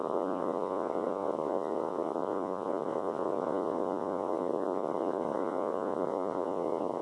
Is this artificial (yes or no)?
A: yes